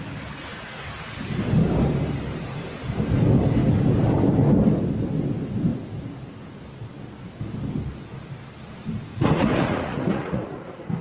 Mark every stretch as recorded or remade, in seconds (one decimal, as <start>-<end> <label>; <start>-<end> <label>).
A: 0.0-9.1 recorded; 9.1-10.6 remade; 10.6-11.0 recorded

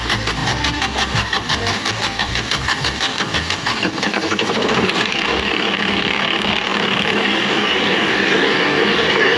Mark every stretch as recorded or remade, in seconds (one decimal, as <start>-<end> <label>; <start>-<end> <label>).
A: 0.0-9.4 remade

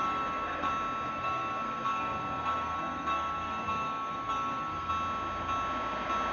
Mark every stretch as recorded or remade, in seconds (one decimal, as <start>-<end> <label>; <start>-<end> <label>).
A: 0.0-0.7 remade; 0.7-1.1 recorded; 1.1-4.9 remade; 4.9-6.3 recorded

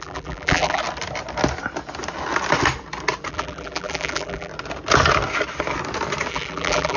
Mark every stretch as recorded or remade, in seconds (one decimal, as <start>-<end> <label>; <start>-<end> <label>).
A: 0.0-0.8 remade; 0.8-3.3 recorded; 3.3-4.5 remade; 4.5-6.3 recorded; 6.3-7.0 remade

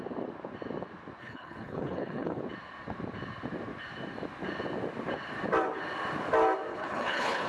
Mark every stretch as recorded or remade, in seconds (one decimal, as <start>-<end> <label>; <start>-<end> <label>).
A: 0.0-1.2 recorded; 1.2-2.4 remade; 2.4-6.7 recorded; 6.7-7.5 remade